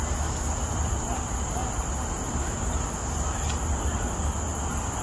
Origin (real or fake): real